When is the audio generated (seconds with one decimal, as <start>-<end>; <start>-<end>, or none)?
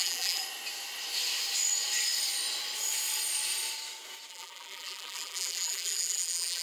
0.0-0.4; 4.3-6.6